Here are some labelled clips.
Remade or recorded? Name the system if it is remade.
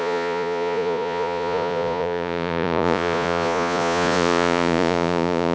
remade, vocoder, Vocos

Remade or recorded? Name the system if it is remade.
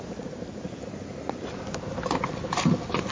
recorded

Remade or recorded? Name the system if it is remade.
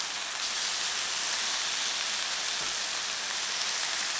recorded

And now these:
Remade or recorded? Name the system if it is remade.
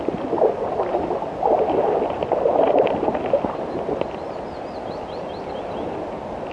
recorded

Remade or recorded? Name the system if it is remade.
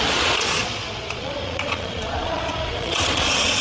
remade, vocoder, Vocos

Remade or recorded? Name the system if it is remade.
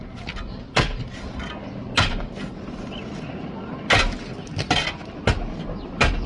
recorded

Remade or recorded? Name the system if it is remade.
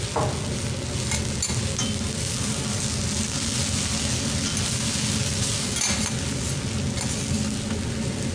recorded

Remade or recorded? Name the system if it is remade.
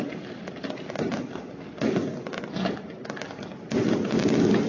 recorded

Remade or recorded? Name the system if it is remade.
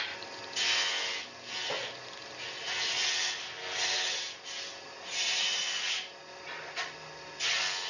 recorded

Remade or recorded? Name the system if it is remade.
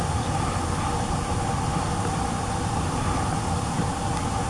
recorded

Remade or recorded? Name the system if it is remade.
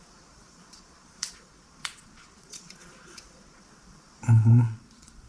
remade, vocoder, Vocos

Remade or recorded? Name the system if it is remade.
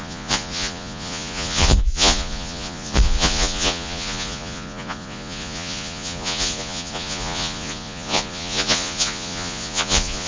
remade, vocoder, Vocos